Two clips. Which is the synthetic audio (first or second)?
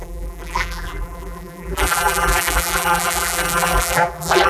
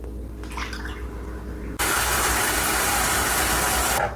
first